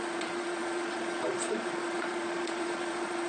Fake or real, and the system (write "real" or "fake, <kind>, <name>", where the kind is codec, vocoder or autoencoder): fake, vocoder, Vocos